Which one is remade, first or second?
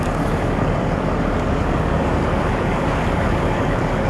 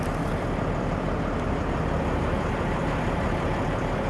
first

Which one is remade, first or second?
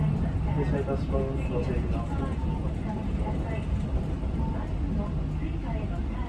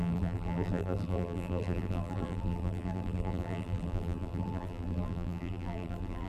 second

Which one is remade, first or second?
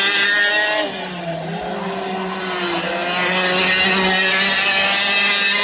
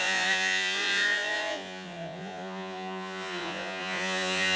second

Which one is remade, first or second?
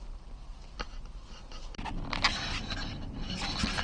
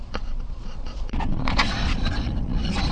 second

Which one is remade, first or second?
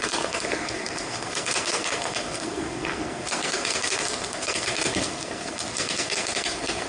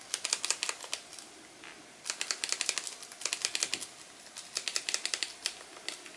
first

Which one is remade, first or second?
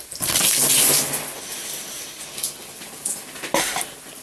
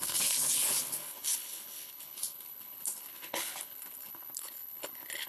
second